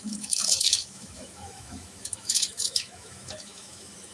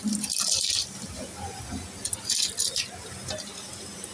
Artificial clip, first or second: first